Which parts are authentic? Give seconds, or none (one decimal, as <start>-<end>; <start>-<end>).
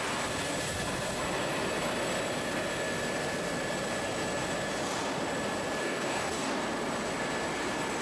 0.0-5.8; 6.5-8.0